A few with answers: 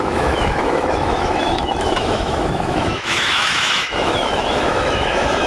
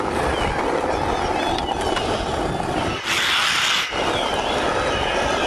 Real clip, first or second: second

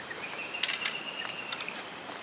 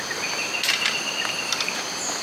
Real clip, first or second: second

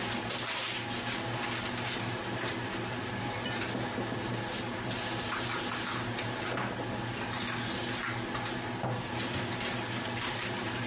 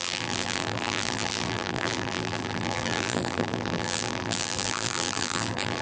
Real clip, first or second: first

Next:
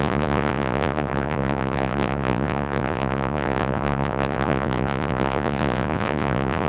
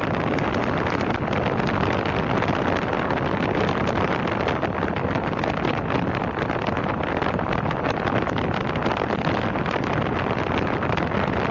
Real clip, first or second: second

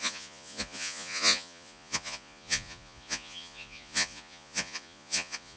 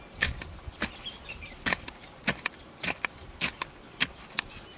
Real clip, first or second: second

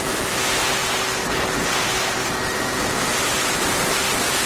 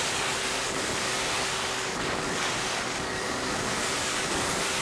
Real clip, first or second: first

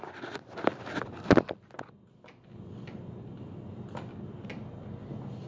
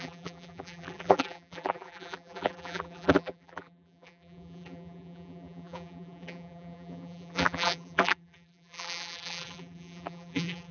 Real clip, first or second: first